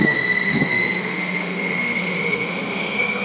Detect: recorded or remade remade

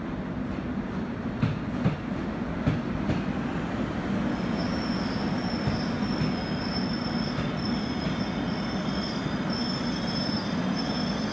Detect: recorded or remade recorded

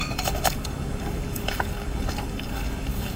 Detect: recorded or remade remade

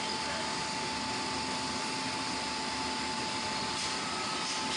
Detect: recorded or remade recorded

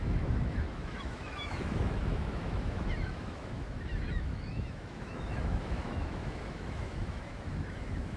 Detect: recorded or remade remade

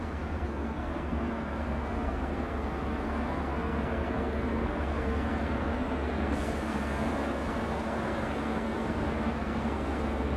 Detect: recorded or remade remade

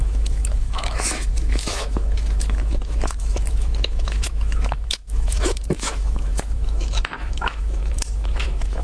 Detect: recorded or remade remade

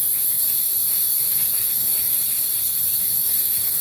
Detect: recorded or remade remade